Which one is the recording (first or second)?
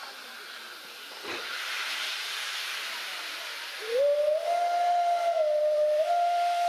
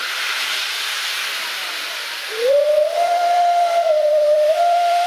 first